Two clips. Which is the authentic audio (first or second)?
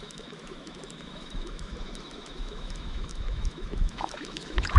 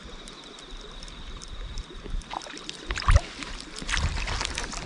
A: second